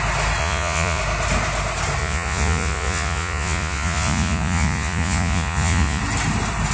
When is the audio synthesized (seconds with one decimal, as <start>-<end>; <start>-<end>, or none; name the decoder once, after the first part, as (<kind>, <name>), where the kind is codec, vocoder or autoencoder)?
0.4-1.0 (vocoder, Vocos); 2.0-6.0